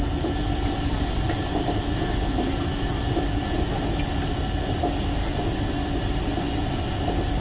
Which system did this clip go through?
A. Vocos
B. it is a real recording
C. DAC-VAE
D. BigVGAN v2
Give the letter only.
B